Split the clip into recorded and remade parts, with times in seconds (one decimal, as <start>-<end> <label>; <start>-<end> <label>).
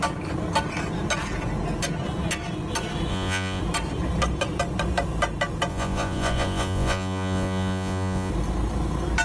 0.0-3.1 recorded; 3.1-3.6 remade; 3.6-5.7 recorded; 5.7-8.3 remade; 8.3-9.2 recorded